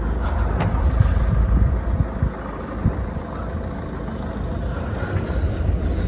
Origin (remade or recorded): recorded